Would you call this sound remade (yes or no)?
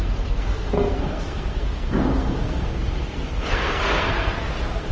yes